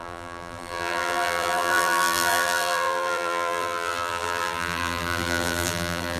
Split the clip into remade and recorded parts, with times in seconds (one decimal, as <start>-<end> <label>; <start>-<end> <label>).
0.0-6.2 remade